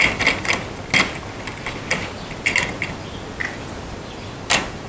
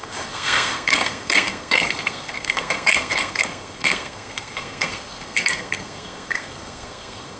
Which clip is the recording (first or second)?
first